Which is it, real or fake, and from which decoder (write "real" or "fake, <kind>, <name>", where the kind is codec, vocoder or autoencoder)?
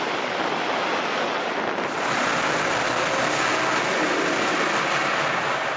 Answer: real